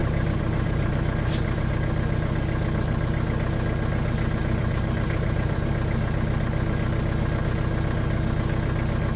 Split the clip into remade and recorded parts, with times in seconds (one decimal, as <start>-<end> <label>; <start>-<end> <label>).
0.0-1.7 remade; 1.7-4.4 recorded; 4.4-5.7 remade; 5.7-9.2 recorded